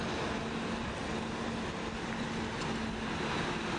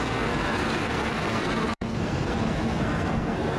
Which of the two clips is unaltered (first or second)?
first